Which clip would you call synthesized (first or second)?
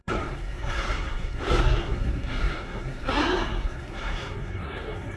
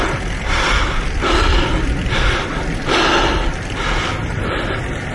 first